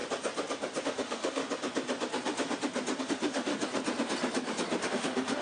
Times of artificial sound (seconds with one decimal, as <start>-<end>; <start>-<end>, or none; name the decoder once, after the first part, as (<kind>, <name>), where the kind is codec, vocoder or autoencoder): 0.8-1.4 (autoencoder, DAC-VAE); 3.0-3.5; 4.9-5.4